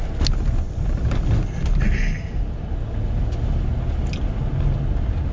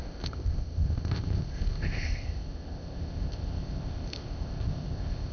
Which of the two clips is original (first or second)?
first